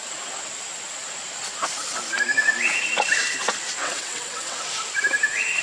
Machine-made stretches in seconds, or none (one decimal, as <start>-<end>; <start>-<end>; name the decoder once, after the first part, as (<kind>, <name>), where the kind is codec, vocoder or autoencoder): 3.8-4.6 (vocoder, WaveNeXt)